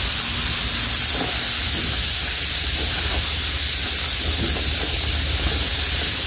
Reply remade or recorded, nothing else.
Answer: recorded